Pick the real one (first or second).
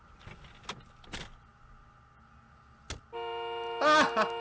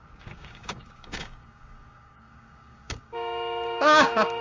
first